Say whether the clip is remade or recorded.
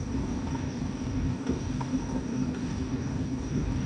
remade